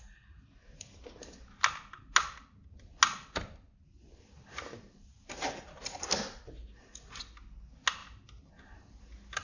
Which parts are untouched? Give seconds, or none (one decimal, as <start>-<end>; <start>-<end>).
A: 0.0-9.4